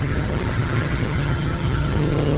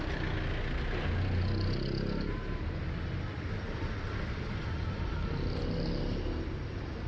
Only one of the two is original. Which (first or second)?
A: second